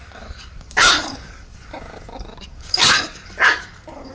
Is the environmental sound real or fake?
fake